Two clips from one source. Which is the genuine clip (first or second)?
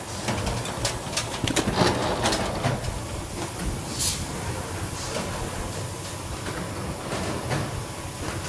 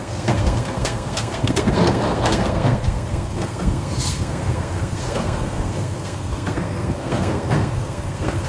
first